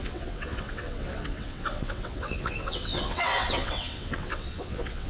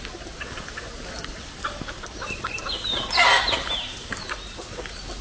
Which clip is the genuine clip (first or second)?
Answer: second